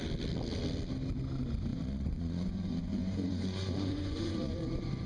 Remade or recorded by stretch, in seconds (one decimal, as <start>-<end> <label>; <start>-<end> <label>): 0.0-1.7 recorded; 1.7-5.1 remade